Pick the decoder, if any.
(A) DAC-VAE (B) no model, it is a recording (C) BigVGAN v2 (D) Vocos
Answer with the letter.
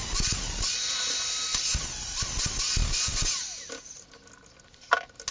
B